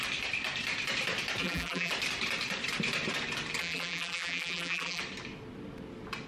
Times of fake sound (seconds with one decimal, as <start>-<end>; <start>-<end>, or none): 1.4-1.9; 3.6-5.0